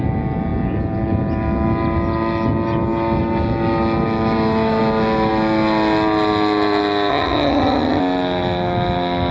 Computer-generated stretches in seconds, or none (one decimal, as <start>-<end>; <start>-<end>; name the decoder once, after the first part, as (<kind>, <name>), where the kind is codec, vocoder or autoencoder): 7.1-8.0 (vocoder, HiFi-GAN)